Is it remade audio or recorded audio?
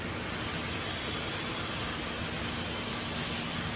recorded